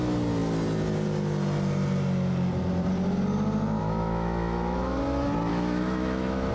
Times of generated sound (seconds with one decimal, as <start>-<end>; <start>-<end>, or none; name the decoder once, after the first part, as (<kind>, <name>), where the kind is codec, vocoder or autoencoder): 3.8-5.0 (autoencoder, DAC-VAE); 5.5-6.5

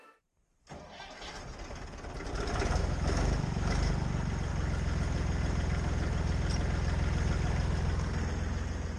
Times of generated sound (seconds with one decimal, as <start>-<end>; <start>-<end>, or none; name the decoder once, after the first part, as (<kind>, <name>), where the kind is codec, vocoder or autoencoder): 2.8-3.9 (autoencoder, DAC-VAE)